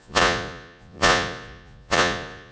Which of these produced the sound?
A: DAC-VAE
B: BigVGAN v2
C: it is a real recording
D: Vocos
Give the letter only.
D